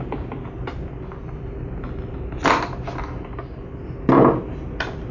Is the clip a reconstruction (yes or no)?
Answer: no